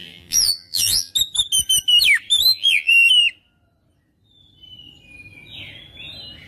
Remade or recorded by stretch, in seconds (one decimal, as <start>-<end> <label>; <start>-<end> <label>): 0.0-1.1 remade; 1.1-2.5 recorded; 2.5-3.1 remade; 3.1-6.5 recorded